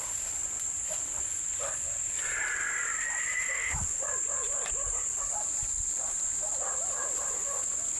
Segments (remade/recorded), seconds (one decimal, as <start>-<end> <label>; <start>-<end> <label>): 0.0-6.3 recorded; 6.3-7.6 remade; 7.6-8.0 recorded